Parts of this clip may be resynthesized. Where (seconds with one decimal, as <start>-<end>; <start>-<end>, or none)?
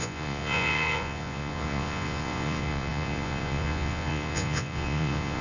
0.0-5.4